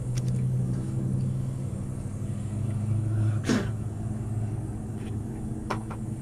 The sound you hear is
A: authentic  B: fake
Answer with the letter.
B